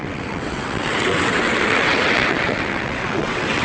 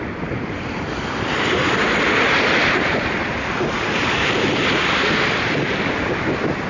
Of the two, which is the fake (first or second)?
first